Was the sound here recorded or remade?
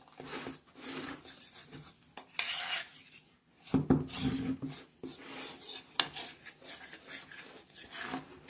recorded